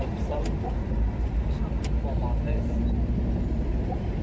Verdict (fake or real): fake